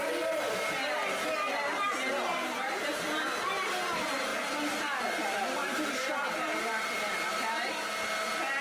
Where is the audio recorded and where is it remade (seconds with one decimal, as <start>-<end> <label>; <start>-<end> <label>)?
0.0-2.3 recorded; 2.3-3.1 remade; 3.1-4.3 recorded; 4.3-5.0 remade; 5.0-5.6 recorded; 5.6-6.7 remade; 6.7-8.6 recorded